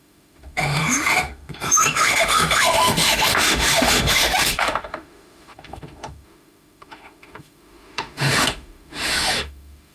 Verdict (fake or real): fake